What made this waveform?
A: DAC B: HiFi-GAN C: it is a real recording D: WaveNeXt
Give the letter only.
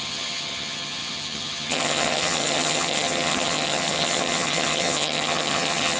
B